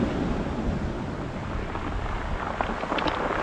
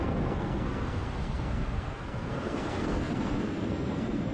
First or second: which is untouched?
first